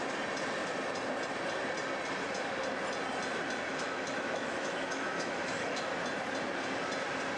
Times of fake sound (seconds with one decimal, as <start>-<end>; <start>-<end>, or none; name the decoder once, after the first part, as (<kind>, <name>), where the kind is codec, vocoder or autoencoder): 3.7-5.9 (autoencoder, DAC-VAE)